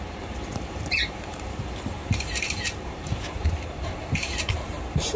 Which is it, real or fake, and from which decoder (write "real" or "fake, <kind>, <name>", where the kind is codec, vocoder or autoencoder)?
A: fake, vocoder, BigVGAN v2